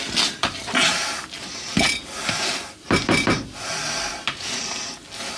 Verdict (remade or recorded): recorded